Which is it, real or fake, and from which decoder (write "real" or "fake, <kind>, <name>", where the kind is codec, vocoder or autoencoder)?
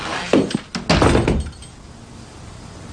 real